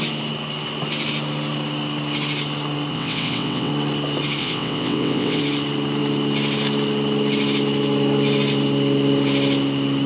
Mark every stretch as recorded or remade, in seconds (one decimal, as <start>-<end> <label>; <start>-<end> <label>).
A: 0.0-2.9 recorded; 2.9-3.7 remade; 3.7-4.4 recorded; 4.4-5.4 remade; 5.4-10.1 recorded